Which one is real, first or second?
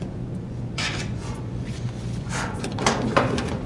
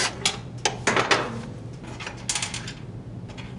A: second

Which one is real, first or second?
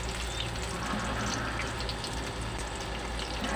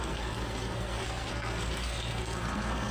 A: first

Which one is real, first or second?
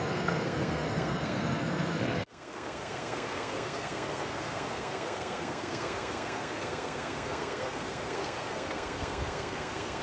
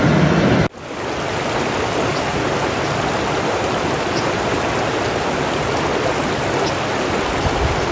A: second